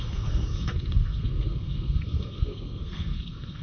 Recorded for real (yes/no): no